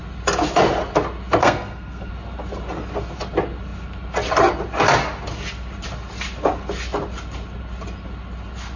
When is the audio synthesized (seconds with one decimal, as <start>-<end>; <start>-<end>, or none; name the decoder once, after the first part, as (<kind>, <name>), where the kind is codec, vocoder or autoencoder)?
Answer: 1.4-2.1 (codec, SNAC)